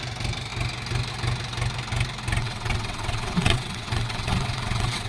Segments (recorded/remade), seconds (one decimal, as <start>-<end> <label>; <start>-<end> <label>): 0.0-2.4 recorded; 2.4-5.1 remade